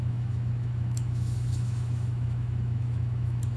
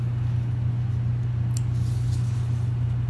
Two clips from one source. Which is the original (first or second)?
second